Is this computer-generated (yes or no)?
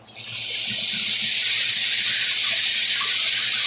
no